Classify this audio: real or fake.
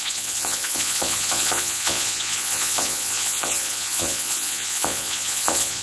fake